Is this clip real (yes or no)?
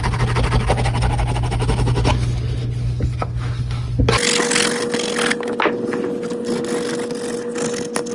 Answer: yes